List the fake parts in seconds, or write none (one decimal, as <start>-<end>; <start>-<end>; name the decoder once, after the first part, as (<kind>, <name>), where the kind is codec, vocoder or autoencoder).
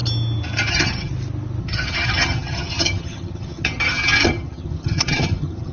0.7-1.1 (vocoder, HiFi-GAN); 1.6-5.7